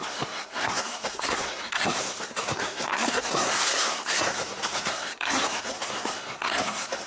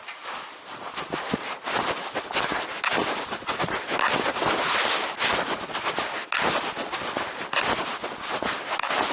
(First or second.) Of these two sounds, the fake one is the first